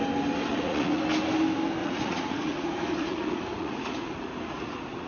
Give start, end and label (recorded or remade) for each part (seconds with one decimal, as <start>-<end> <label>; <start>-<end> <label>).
0.0-0.5 recorded; 0.5-1.0 remade; 1.0-1.8 recorded; 1.8-5.1 remade